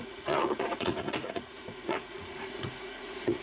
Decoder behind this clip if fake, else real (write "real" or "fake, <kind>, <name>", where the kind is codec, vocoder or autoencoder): fake, vocoder, Vocos